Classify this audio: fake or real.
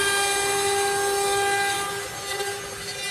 real